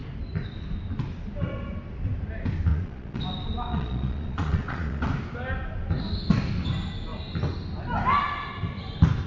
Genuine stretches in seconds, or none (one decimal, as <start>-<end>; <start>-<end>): 0.0-2.7; 3.2-3.7; 5.1-9.3